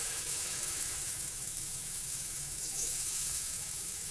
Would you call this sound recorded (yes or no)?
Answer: no